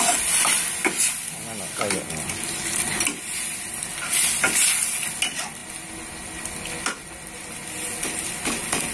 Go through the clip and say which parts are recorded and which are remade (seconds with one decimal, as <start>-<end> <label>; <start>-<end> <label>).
0.0-8.9 recorded